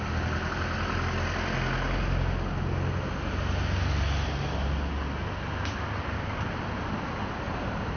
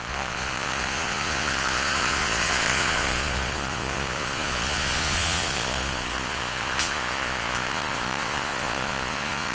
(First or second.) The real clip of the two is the first